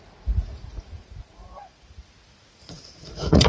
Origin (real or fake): fake